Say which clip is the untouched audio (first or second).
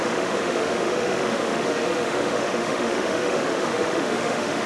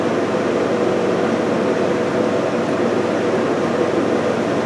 second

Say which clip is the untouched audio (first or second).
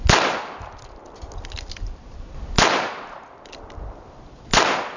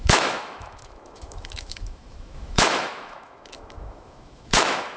first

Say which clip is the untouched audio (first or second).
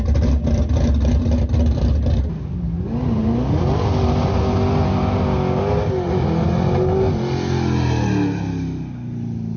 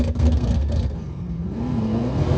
first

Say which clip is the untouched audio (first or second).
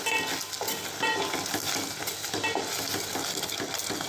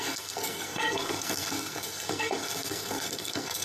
first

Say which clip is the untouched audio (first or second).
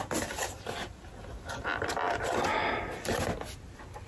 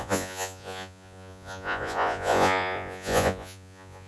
first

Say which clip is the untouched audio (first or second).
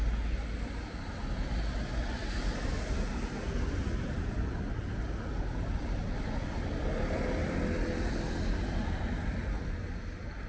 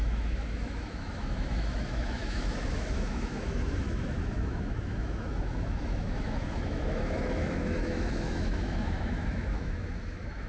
first